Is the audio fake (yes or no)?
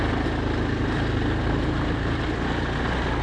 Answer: no